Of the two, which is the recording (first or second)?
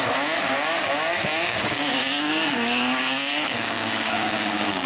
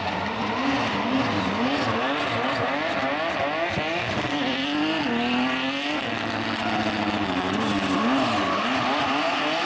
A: second